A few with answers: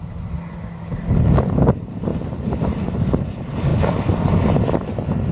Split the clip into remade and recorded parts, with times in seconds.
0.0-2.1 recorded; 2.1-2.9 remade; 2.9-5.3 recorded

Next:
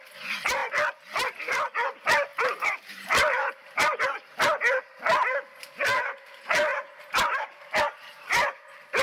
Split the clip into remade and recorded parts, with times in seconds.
0.0-2.3 recorded; 2.3-4.0 remade; 4.0-6.7 recorded; 6.7-9.0 remade

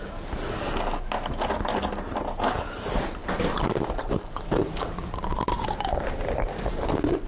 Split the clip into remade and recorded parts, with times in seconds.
0.0-3.2 recorded; 3.2-7.3 remade

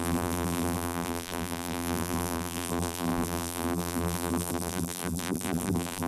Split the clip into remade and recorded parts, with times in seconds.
0.0-6.1 remade